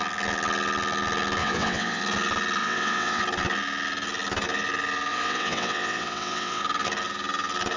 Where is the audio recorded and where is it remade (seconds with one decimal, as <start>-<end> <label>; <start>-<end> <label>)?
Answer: 0.0-1.4 recorded; 1.4-2.0 remade; 2.0-2.6 recorded; 2.6-3.2 remade; 3.2-5.1 recorded; 5.1-6.6 remade; 6.6-7.8 recorded